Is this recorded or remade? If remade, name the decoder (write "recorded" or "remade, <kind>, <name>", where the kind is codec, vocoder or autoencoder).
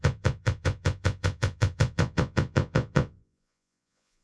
remade, vocoder, Vocos